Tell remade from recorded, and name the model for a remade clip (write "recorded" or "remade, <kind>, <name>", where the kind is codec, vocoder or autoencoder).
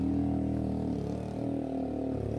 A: recorded